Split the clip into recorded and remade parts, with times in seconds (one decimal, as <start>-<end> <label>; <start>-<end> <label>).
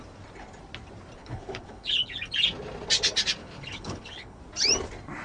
0.0-1.2 recorded; 1.2-2.1 remade; 2.1-3.4 recorded; 3.4-4.4 remade; 4.4-5.2 recorded